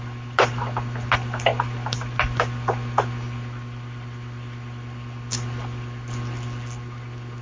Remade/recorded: recorded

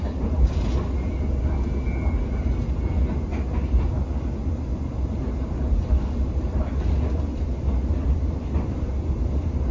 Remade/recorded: recorded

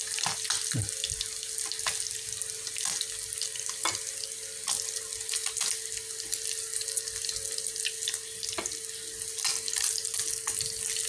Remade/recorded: recorded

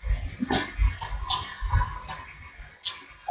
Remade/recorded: recorded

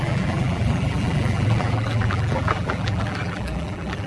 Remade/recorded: remade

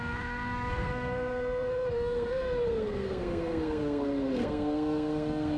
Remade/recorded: remade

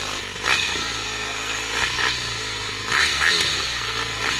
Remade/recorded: remade